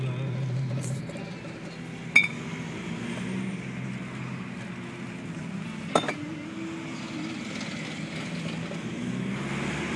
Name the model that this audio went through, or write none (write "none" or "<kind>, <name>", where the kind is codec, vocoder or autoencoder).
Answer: none